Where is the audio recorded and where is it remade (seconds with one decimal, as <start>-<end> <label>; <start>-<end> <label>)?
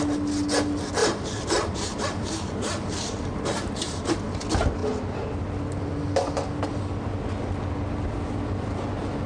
0.0-1.0 recorded; 1.0-4.1 remade; 4.1-9.3 recorded